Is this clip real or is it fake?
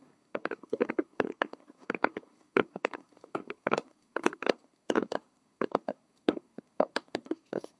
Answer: fake